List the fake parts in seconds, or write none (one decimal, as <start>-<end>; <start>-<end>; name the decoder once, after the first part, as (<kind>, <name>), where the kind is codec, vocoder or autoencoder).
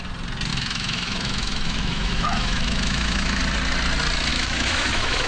0.5-3.4 (autoencoder, DAC-VAE); 4.3-5.3